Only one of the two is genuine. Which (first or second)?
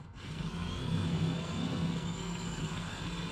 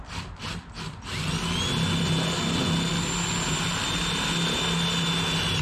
second